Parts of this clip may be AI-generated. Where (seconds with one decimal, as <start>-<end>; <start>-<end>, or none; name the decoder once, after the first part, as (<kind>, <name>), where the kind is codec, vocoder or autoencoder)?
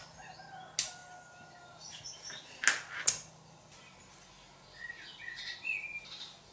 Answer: none